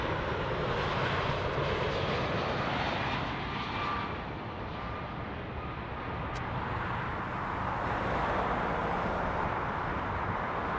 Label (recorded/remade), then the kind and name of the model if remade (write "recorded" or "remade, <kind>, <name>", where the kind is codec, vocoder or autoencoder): recorded